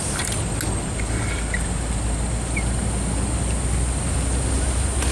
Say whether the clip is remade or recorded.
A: recorded